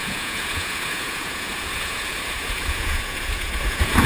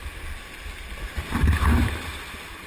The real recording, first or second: second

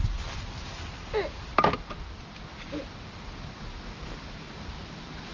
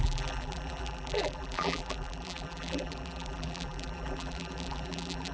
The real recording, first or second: first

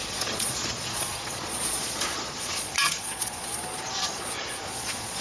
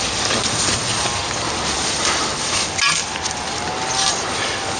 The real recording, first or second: second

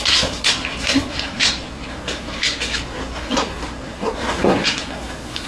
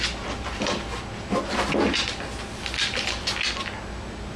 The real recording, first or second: second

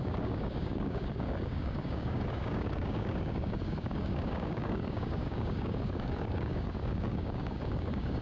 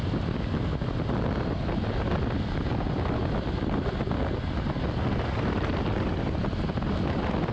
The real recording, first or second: second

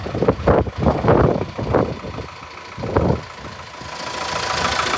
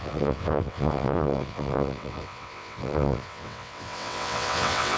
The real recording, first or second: first